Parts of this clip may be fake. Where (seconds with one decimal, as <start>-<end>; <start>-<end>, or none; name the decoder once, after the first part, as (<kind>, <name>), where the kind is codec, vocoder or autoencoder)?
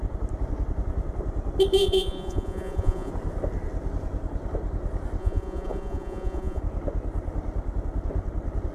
1.8-3.1 (vocoder, Vocos); 5.2-6.6